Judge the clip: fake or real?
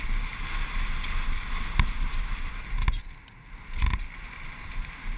real